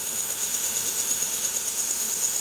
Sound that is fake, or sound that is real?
fake